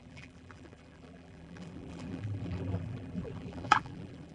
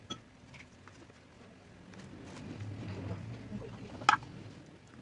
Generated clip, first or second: first